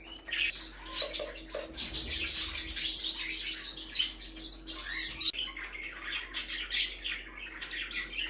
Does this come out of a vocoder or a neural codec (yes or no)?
no